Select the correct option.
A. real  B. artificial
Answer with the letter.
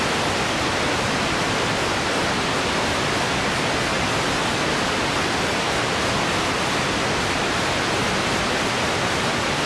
A